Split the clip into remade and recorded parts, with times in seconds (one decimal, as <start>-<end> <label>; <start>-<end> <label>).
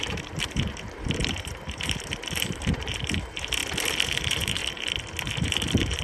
0.0-3.6 remade; 3.6-4.1 recorded; 4.1-4.6 remade; 4.6-5.3 recorded; 5.3-6.0 remade